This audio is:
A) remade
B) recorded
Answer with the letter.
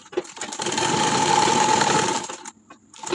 B